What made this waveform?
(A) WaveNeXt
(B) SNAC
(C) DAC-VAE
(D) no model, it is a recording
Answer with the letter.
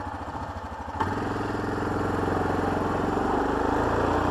D